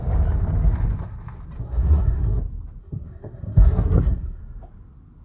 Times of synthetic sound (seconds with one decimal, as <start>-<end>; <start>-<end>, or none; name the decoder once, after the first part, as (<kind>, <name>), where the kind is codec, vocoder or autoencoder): 1.6-2.4 (codec, SNAC); 2.8-4.4